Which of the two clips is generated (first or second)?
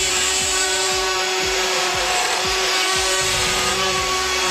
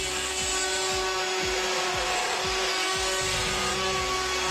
first